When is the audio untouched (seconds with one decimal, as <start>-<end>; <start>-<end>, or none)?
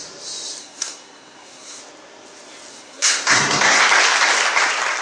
0.0-0.6; 1.8-2.7; 3.8-5.0